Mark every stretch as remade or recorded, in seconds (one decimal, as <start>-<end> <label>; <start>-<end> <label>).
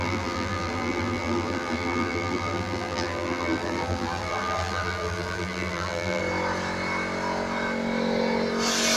0.0-6.2 remade; 6.2-9.0 recorded